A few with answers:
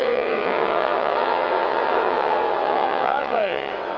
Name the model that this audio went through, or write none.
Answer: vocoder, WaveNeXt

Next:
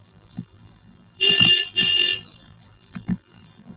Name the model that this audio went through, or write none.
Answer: vocoder, BigVGAN v2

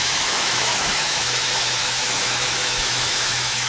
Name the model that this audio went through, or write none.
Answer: autoencoder, DAC-VAE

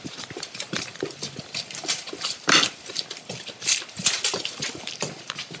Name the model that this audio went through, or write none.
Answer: vocoder, BigVGAN v2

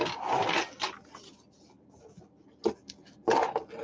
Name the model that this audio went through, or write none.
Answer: none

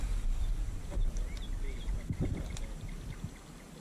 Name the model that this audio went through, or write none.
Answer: none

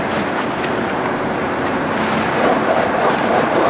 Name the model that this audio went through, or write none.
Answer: vocoder, BigVGAN v2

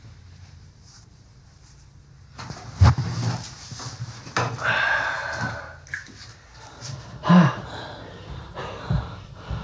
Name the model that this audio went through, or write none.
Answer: vocoder, BigVGAN v2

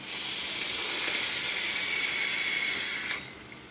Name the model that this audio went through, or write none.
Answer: none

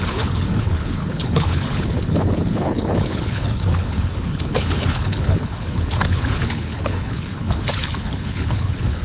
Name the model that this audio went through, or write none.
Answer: codec, HILCodec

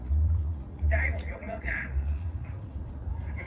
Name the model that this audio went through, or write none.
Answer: vocoder, Vocos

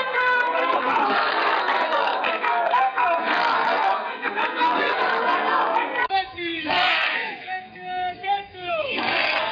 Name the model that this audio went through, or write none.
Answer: codec, SNAC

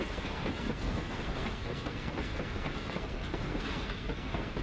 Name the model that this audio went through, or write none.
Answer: codec, SNAC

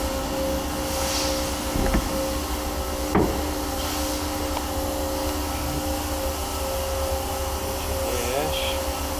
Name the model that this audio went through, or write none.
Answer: none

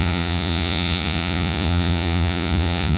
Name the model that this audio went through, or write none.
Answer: vocoder, Vocos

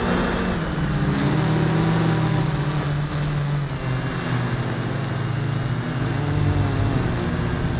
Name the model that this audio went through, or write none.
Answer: none